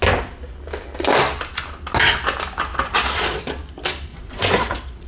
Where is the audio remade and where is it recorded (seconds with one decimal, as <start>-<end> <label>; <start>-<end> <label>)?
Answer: 0.0-2.7 recorded; 2.7-3.4 remade; 3.4-4.1 recorded; 4.1-5.1 remade